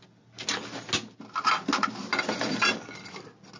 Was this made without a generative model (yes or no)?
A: yes